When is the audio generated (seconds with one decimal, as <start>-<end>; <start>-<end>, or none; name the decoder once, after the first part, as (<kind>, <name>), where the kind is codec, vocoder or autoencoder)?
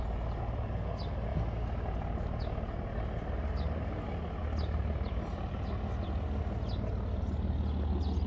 none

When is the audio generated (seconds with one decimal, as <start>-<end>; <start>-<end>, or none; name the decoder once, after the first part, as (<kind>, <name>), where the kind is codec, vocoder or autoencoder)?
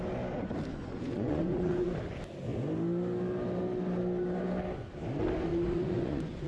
0.7-1.9 (vocoder, Vocos); 5.5-6.5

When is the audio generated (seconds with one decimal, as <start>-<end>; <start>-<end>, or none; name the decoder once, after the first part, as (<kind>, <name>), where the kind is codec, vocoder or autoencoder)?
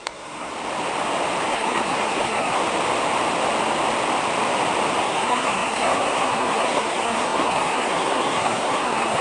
0.0-0.5 (codec, SNAC); 1.5-2.6; 5.0-9.2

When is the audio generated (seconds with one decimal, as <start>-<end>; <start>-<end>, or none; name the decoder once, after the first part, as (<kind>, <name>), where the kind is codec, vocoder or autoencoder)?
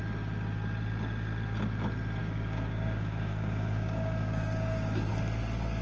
2.2-5.1 (codec, DAC)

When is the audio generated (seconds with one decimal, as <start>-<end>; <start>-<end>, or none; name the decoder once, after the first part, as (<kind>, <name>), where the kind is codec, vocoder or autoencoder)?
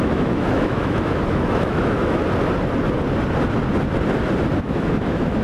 0.0-2.2 (autoencoder, DAC-VAE); 4.6-5.4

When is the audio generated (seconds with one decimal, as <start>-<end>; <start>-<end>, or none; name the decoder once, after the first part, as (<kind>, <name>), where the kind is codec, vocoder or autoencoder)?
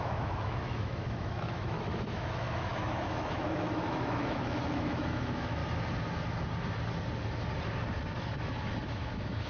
0.0-5.6 (autoencoder, DAC-VAE); 8.8-9.5